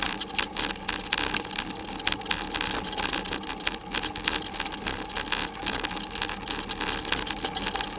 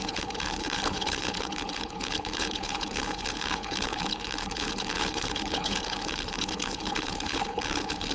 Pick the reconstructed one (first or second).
second